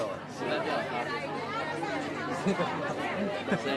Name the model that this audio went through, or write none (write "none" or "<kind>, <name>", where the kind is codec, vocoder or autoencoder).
none